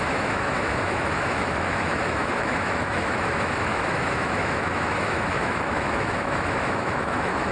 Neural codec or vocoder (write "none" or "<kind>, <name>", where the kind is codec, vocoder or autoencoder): autoencoder, DAC-VAE